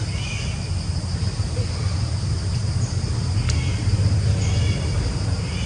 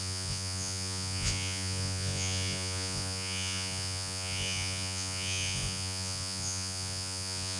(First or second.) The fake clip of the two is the second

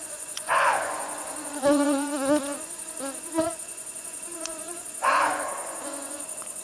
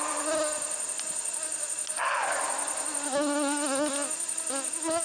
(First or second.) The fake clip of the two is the first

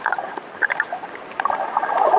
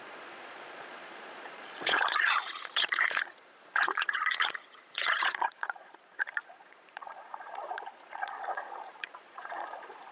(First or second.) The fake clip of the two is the second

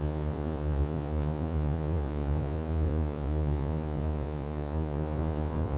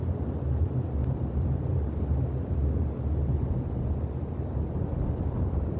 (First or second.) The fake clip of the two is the first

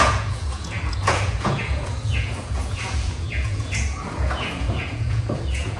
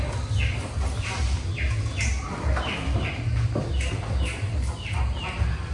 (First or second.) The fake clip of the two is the first